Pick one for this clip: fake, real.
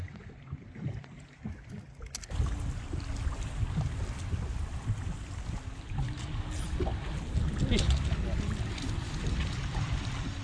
real